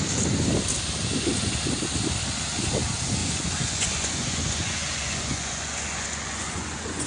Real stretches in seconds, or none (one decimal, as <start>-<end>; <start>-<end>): 0.0-3.2